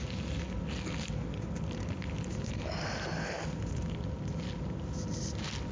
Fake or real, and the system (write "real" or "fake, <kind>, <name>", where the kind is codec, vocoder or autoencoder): real